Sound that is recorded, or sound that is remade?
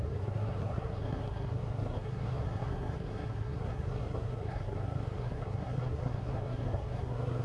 remade